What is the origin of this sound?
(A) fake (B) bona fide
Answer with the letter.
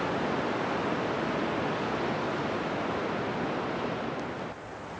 B